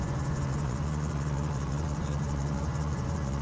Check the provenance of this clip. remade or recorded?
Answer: remade